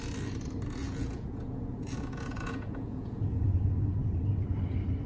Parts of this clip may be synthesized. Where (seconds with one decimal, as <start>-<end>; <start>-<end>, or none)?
0.8-3.6